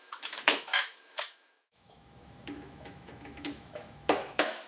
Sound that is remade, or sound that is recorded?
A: remade